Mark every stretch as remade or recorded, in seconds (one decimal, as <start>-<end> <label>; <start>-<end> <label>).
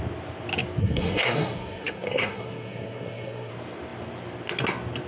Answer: 0.0-0.8 recorded; 0.8-3.5 remade; 3.5-5.1 recorded